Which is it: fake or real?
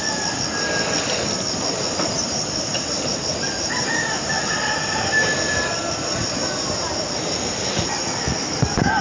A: real